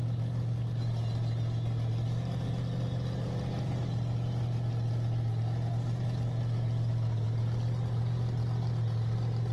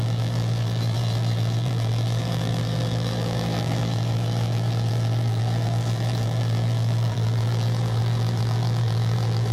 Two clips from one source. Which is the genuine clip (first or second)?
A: first